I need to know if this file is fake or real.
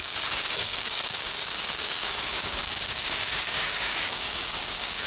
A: fake